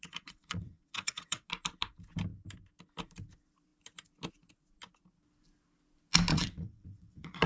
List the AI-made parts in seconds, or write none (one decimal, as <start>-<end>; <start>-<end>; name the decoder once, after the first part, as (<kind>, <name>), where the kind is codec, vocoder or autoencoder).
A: 0.0-1.5 (vocoder, WaveNeXt); 6.3-7.5